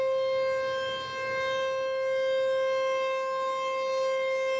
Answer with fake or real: real